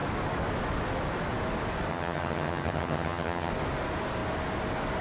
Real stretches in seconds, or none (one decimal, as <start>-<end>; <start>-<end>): 0.0-1.9; 3.5-5.0